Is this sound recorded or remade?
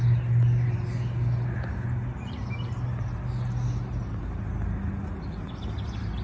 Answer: recorded